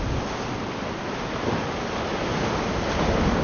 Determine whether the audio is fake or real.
real